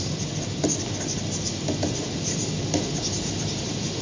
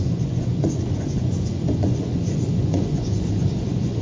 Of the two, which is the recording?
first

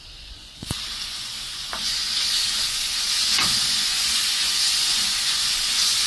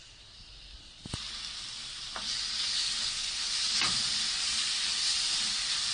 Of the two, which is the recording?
second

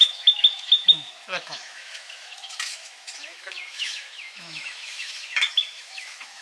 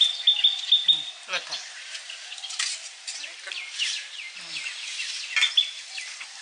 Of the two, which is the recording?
second